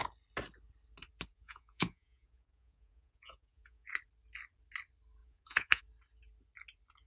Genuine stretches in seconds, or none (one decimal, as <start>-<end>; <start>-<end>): 0.0-1.3; 3.9-5.2; 5.8-7.1